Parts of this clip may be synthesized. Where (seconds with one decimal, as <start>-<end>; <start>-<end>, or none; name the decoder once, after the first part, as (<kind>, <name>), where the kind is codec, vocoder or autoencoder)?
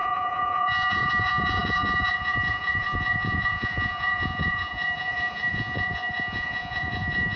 0.0-7.4 (vocoder, Vocos)